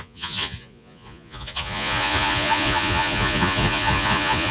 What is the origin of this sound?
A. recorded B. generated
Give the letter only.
B